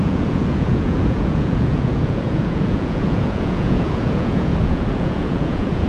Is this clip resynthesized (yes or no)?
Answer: yes